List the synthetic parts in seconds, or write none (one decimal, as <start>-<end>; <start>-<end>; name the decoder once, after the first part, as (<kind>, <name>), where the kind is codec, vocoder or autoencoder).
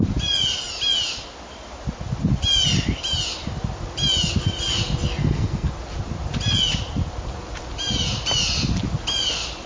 5.2-5.7 (codec, SNAC)